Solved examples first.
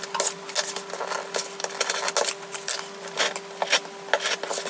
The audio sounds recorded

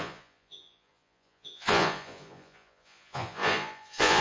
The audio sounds remade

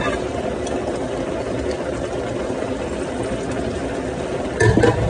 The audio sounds recorded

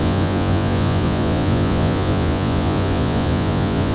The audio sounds remade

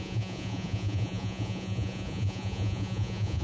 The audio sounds remade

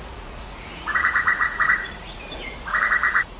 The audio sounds remade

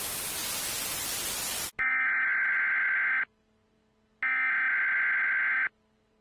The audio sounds recorded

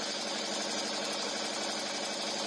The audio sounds recorded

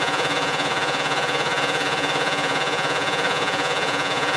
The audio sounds remade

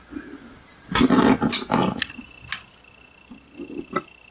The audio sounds recorded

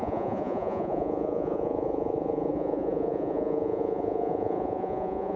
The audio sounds remade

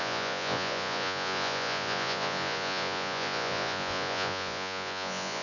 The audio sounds remade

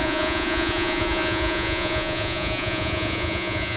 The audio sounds remade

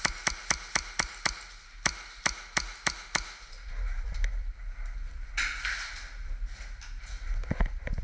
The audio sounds recorded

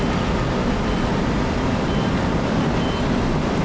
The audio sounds recorded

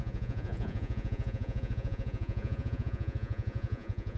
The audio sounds remade